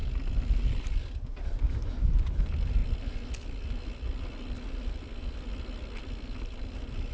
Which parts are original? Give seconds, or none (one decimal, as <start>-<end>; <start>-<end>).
0.0-7.1